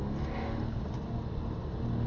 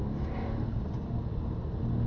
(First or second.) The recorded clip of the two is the first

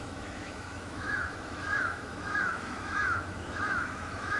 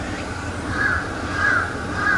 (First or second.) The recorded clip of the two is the second